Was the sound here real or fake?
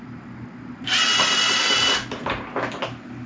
real